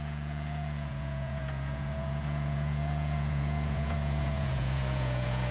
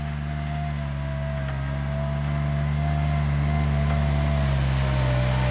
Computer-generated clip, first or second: first